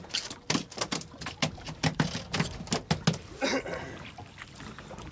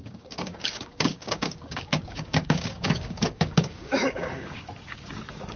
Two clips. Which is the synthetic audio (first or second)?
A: second